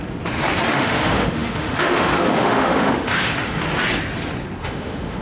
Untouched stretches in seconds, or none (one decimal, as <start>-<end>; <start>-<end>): 0.0-0.7; 3.6-4.6